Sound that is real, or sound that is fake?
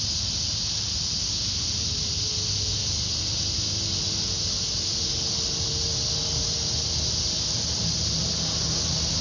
real